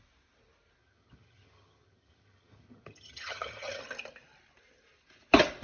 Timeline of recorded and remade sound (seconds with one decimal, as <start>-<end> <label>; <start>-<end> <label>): 0.0-0.8 recorded; 0.8-3.8 remade; 3.8-5.6 recorded